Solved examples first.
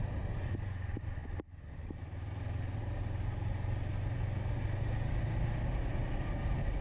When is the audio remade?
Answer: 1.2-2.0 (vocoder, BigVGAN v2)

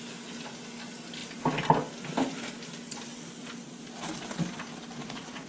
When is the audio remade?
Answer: 5.0-5.5 (vocoder, Vocos)

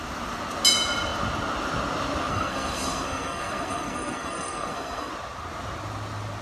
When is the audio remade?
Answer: 2.3-5.1 (codec, SNAC)

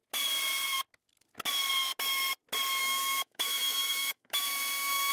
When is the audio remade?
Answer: 2.8-5.1 (autoencoder, DAC-VAE)

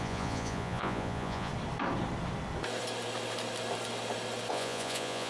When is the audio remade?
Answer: 0.0-1.5 (vocoder, Vocos); 4.5-5.3

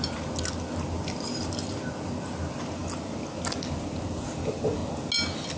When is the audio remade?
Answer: none

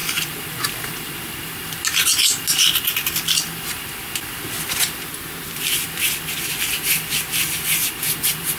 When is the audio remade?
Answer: none

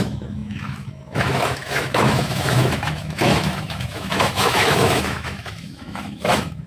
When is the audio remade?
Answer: 0.0-6.7 (autoencoder, DAC-VAE)